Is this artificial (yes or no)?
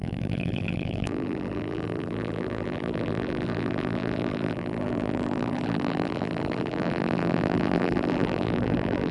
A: yes